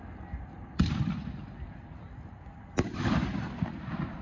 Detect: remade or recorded remade